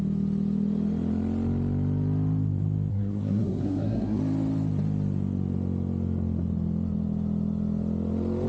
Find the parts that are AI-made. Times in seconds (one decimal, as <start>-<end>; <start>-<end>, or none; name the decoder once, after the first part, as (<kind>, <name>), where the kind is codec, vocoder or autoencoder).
2.9-4.2 (codec, SNAC)